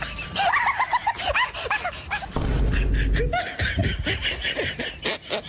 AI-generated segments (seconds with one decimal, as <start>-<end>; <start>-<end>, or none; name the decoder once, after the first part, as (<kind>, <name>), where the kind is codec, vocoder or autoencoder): none